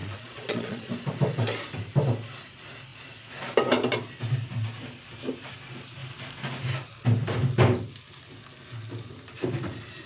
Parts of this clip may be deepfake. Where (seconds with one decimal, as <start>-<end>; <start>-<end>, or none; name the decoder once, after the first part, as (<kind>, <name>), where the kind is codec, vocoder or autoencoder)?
0.0-0.9 (vocoder, Vocos)